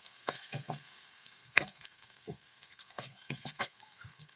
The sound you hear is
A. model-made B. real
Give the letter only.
A